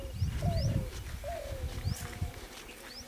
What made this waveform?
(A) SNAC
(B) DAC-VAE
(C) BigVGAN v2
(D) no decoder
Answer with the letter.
D